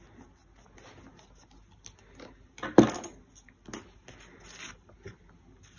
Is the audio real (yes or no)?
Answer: yes